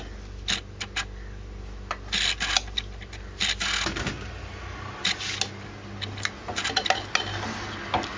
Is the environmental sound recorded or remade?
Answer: recorded